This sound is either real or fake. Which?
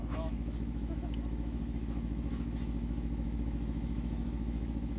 fake